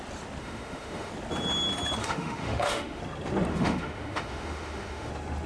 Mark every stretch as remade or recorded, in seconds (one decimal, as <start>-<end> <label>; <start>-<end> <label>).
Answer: 0.0-0.4 recorded; 0.4-1.1 remade; 1.1-2.0 recorded; 2.0-3.0 remade; 3.0-3.5 recorded; 3.5-5.1 remade; 5.1-5.5 recorded